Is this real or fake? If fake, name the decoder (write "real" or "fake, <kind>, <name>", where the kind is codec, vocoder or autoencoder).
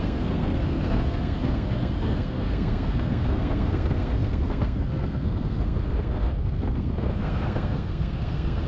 fake, codec, SNAC